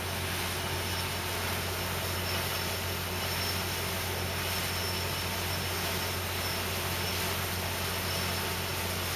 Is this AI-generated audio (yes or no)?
no